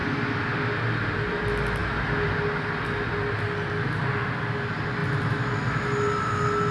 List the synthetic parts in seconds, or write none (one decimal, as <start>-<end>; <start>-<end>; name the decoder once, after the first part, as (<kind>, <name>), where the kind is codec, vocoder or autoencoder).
none